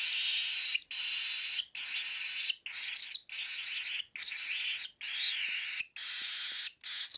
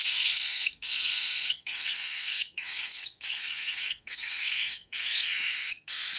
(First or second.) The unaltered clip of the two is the first